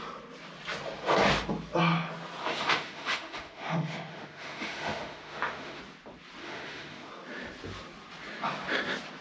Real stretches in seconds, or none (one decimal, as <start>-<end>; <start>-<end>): 0.0-2.4; 5.8-6.4; 7.1-9.2

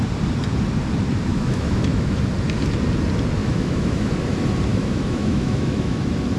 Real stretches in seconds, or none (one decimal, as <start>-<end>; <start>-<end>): 0.0-1.3; 2.2-3.4; 4.1-4.7; 6.0-6.4